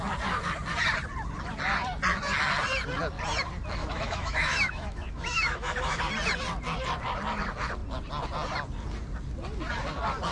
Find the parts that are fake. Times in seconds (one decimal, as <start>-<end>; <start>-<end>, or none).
3.8-6.0